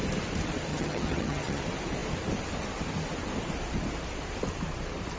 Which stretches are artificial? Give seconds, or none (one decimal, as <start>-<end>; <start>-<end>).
0.7-1.6